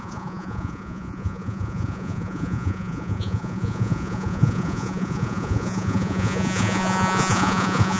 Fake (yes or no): yes